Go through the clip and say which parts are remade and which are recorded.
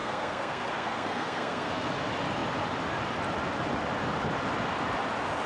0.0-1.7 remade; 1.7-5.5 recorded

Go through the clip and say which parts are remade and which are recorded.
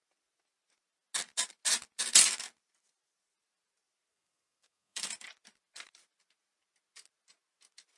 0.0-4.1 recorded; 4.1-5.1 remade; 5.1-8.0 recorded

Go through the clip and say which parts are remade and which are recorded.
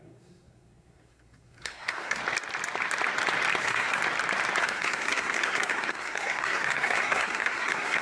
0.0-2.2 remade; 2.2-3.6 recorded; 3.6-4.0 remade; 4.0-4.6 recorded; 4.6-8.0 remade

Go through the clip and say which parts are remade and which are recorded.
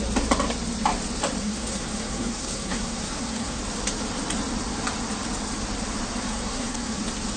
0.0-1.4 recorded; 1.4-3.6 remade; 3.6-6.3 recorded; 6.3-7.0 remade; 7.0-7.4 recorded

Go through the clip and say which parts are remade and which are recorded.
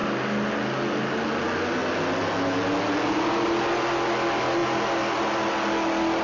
0.0-6.2 recorded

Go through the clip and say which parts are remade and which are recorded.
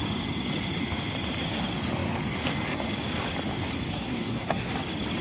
0.0-3.9 recorded; 3.9-4.7 remade; 4.7-5.2 recorded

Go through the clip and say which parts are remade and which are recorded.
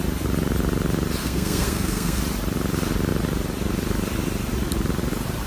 0.0-1.2 recorded; 1.2-2.2 remade; 2.2-5.5 recorded